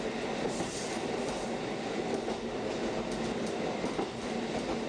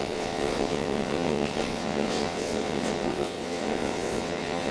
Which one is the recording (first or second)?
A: first